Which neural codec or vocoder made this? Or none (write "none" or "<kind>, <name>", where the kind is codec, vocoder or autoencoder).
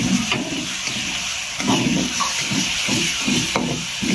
none